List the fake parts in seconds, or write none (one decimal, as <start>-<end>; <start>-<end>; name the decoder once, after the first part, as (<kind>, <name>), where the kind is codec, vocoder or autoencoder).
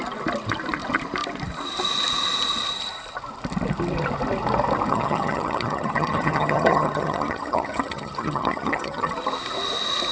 4.9-9.1 (vocoder, HiFi-GAN)